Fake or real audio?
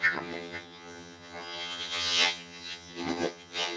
fake